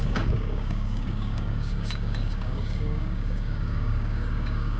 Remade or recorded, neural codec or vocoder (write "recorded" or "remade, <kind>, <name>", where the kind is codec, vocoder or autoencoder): remade, codec, DAC